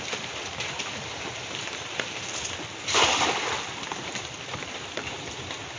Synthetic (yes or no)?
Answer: no